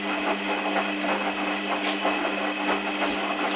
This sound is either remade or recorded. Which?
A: recorded